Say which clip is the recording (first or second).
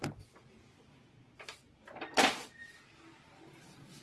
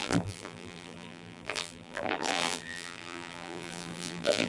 first